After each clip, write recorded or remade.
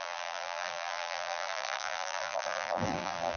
remade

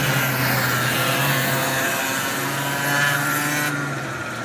recorded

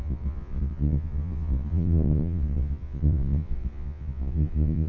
remade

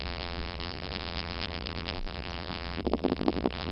remade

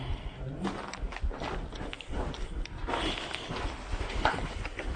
recorded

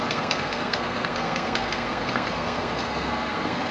remade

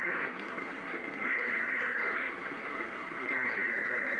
remade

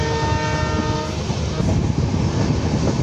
recorded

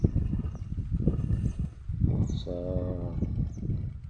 recorded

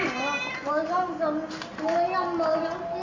recorded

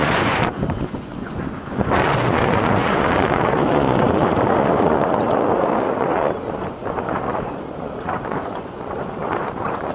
remade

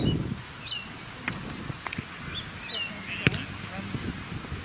recorded